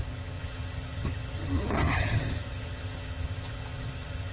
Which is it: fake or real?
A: fake